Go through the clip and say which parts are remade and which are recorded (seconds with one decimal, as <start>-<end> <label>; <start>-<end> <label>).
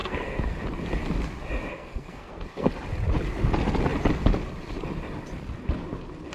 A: 0.0-0.6 remade; 0.6-1.7 recorded; 1.7-2.7 remade; 2.7-6.3 recorded